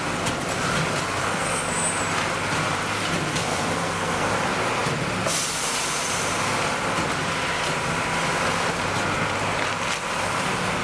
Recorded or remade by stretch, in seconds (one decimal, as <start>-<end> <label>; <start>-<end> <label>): 0.0-1.2 recorded; 1.2-1.7 remade; 1.7-3.5 recorded; 3.5-4.3 remade; 4.3-10.8 recorded